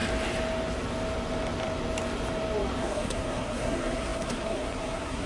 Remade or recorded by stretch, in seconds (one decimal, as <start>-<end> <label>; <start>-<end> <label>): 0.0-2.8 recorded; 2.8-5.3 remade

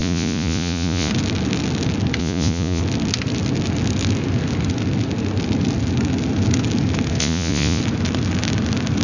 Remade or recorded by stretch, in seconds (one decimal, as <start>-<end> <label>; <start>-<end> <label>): 0.0-1.1 remade; 1.1-2.2 recorded; 2.2-2.8 remade; 2.8-7.2 recorded; 7.2-7.8 remade; 7.8-9.0 recorded

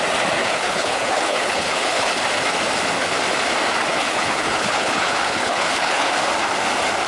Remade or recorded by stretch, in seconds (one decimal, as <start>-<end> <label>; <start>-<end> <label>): 0.0-0.4 recorded; 0.4-2.1 remade; 2.1-3.9 recorded; 3.9-6.1 remade; 6.1-7.1 recorded